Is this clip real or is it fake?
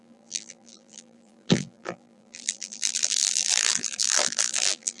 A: fake